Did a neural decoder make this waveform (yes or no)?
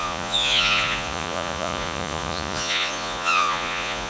yes